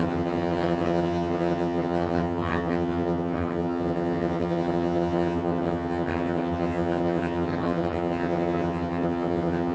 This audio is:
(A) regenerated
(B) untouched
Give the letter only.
A